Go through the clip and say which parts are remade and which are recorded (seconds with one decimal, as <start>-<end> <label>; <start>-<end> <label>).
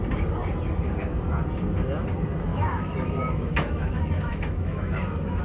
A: 0.0-2.5 recorded; 2.5-5.4 remade